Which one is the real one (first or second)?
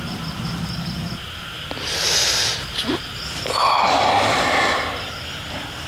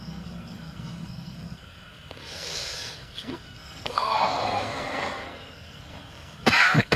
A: first